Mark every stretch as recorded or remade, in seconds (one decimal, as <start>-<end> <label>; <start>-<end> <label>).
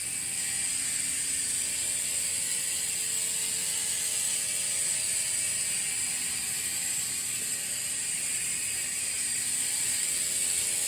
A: 0.0-5.5 recorded; 5.5-10.0 remade; 10.0-10.9 recorded